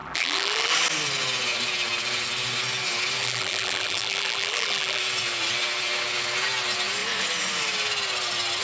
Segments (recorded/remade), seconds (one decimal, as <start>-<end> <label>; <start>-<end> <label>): 0.0-0.7 remade; 0.7-3.2 recorded; 3.2-5.0 remade; 5.0-8.6 recorded